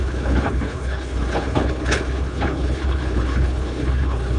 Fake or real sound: fake